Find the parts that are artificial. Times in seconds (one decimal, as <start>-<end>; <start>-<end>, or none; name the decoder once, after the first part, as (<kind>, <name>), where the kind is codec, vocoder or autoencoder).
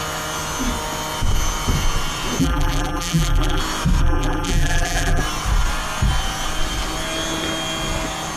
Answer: 2.4-3.6 (vocoder, BigVGAN v2); 4.0-5.2